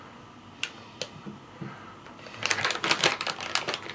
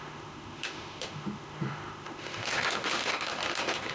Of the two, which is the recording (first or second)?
first